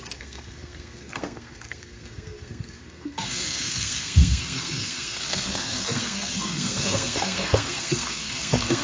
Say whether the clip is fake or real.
fake